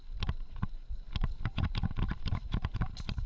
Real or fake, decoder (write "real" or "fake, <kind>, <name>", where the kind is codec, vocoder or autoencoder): real